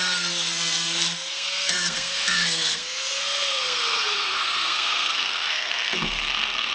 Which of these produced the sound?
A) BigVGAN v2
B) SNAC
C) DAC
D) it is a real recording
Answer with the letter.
B